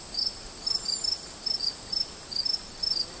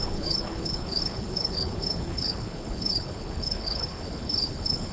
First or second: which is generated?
second